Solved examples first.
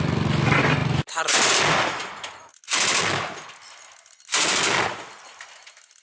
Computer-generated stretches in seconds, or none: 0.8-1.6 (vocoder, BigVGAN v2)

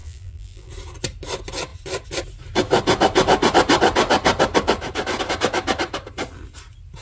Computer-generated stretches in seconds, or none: 0.0-0.7 (vocoder, BigVGAN v2)

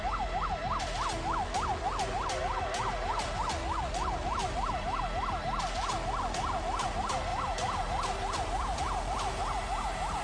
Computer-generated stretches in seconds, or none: 4.4-5.0 (vocoder, BigVGAN v2); 7.3-8.8

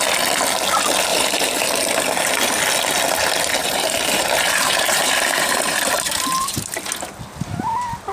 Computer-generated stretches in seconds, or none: 1.1-2.6 (vocoder, BigVGAN v2); 3.6-6.9